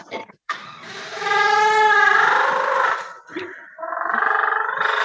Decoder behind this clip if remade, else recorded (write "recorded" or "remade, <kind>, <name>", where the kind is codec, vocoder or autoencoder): remade, vocoder, BigVGAN v2